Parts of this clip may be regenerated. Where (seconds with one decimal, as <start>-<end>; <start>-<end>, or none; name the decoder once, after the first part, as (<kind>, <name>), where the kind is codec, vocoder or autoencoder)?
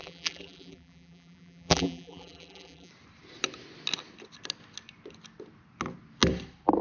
0.0-2.9 (vocoder, BigVGAN v2)